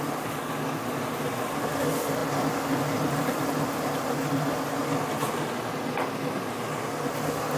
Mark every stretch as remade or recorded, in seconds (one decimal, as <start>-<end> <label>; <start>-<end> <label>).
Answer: 0.0-7.6 recorded